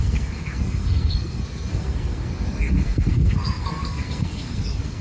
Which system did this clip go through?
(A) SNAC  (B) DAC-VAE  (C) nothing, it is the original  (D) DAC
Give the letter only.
A